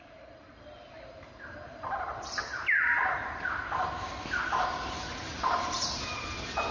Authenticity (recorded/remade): recorded